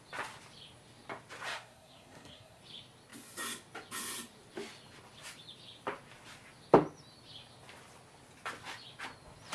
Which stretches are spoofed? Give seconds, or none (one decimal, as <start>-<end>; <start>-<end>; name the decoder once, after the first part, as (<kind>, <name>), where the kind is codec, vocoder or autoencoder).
1.5-2.6 (codec, SNAC)